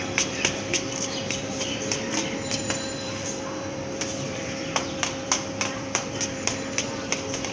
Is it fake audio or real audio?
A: fake